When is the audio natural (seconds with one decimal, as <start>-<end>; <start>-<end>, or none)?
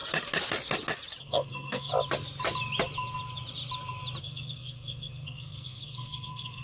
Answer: 0.0-1.2; 1.9-4.2